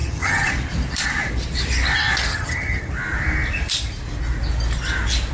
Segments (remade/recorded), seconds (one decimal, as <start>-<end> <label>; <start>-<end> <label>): 0.0-0.5 remade; 0.5-2.3 recorded; 2.3-2.9 remade; 2.9-5.3 recorded